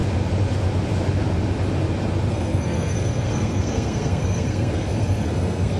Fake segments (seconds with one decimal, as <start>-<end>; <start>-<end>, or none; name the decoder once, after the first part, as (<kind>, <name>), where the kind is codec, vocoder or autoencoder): 2.3-5.8 (codec, SNAC)